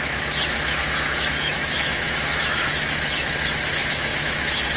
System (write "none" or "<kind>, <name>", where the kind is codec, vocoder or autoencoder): autoencoder, DAC-VAE